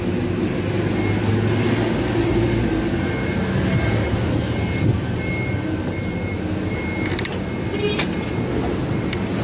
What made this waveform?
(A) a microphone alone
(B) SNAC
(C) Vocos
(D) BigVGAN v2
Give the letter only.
A